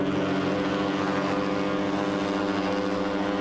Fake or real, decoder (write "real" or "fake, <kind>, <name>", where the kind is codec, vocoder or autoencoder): real